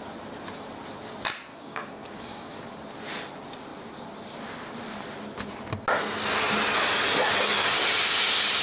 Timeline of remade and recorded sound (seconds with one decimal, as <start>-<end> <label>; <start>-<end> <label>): 0.0-1.5 recorded; 1.5-2.5 remade; 2.5-8.6 recorded